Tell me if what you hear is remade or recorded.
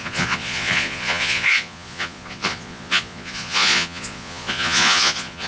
remade